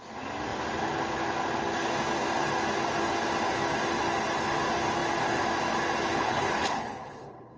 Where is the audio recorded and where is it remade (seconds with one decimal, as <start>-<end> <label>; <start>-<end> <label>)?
0.0-6.1 recorded; 6.1-7.6 remade